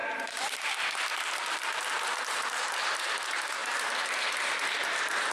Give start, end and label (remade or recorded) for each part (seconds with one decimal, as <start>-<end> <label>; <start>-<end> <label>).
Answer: 0.0-0.7 remade; 0.7-1.1 recorded; 1.1-2.5 remade; 2.5-3.6 recorded; 3.6-5.3 remade